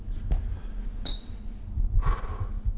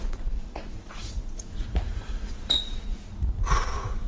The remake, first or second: second